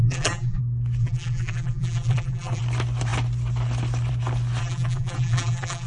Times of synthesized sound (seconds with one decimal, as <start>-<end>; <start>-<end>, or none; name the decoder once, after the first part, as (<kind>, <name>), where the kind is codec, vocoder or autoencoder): 0.0-0.6 (vocoder, BigVGAN v2); 1.0-2.6; 4.6-5.9